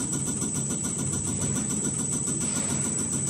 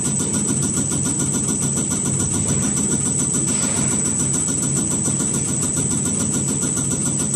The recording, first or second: second